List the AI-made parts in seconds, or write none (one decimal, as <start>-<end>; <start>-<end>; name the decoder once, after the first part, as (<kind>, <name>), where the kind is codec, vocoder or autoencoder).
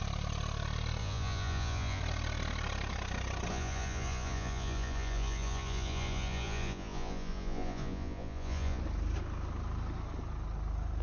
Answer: 1.0-2.0 (vocoder, Vocos); 3.5-8.8